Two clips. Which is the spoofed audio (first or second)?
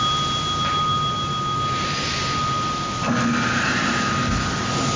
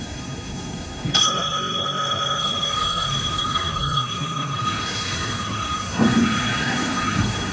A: second